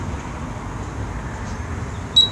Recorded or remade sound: recorded